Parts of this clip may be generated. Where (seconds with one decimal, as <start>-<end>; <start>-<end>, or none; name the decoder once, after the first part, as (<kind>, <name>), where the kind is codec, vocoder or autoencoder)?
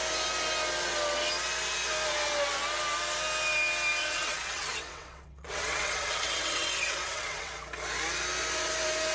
4.0-7.5 (vocoder, WaveNeXt)